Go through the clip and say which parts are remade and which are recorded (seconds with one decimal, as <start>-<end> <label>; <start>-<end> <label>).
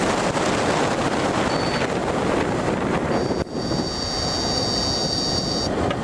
0.0-6.0 recorded